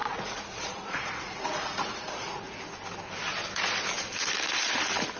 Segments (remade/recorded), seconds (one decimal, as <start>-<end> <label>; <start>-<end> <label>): 0.0-2.6 remade; 2.6-5.2 recorded